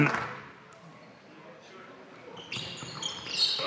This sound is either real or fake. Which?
real